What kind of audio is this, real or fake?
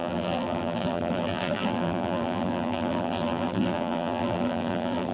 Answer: fake